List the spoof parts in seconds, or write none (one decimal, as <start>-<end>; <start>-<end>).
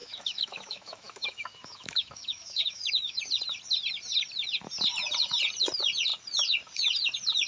0.0-3.2